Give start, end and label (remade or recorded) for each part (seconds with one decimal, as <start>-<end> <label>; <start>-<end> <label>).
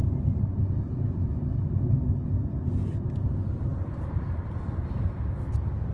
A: 0.0-5.9 recorded